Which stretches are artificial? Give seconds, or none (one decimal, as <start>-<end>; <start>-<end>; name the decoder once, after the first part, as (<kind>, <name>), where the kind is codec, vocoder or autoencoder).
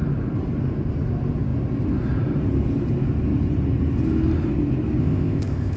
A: 5.0-5.8 (codec, ZipCodec)